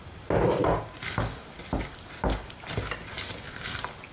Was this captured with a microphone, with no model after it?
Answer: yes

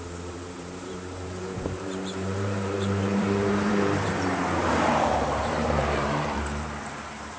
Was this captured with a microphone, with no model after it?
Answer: no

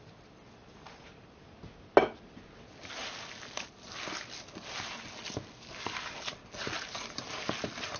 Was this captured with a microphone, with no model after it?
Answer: yes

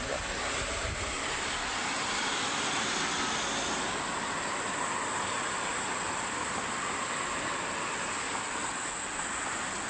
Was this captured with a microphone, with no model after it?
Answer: yes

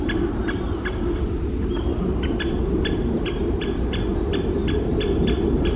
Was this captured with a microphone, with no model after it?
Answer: yes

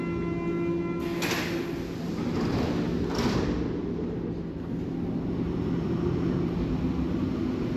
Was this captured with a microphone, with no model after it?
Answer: yes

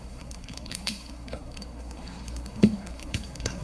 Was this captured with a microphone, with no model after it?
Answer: no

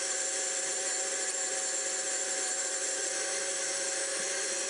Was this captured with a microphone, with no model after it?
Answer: yes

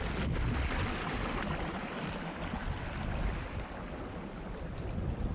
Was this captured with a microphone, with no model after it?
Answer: yes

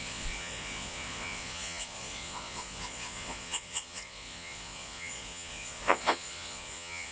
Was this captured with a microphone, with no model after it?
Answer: no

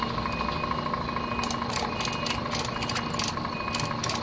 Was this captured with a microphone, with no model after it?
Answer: yes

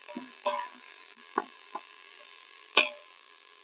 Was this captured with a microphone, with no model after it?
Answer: no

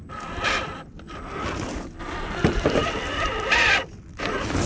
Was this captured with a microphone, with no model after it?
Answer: yes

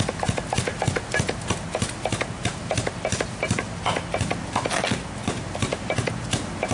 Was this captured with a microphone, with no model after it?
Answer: yes